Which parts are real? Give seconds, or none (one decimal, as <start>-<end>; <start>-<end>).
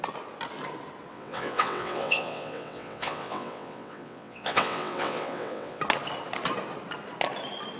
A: 0.0-1.1; 5.8-7.8